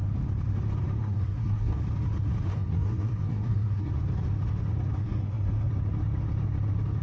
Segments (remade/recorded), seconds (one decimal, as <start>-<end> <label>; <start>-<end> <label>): 0.0-1.0 recorded; 1.0-1.8 remade; 1.8-2.5 recorded; 2.5-3.9 remade; 3.9-5.0 recorded; 5.0-5.7 remade; 5.7-7.0 recorded